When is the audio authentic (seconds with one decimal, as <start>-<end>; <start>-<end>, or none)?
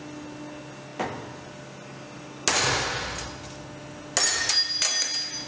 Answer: 0.0-5.5